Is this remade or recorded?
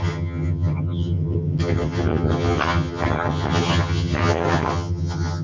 remade